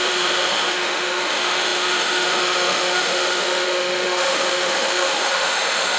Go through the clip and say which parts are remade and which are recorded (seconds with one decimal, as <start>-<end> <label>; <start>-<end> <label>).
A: 0.0-6.0 remade